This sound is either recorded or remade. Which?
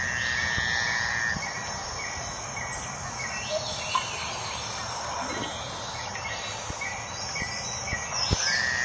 recorded